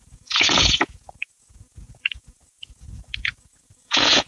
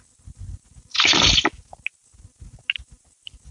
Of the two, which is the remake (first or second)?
first